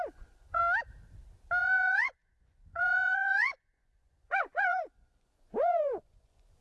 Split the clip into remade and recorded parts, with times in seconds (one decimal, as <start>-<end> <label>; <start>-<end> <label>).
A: 0.0-0.6 remade; 0.6-1.6 recorded; 1.6-6.6 remade